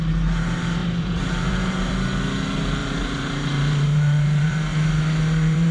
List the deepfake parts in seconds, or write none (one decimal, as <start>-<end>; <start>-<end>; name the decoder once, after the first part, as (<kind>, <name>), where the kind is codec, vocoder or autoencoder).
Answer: 0.8-1.9 (vocoder, BigVGAN v2); 2.8-5.7